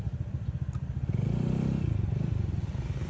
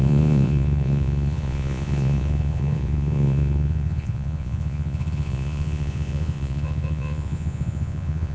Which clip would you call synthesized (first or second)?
second